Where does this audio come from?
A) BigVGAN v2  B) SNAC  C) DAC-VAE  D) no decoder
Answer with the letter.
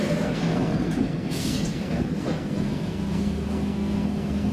B